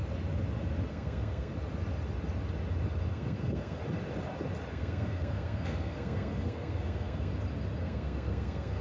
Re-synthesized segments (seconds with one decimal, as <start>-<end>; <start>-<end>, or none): 0.9-1.5; 3.1-3.8; 4.7-7.3; 7.8-8.8